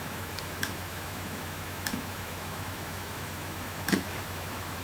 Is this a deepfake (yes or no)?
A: yes